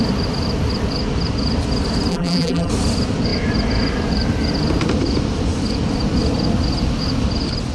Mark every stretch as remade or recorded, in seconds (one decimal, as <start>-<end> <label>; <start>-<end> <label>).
0.0-2.1 recorded; 2.1-2.7 remade; 2.7-7.7 recorded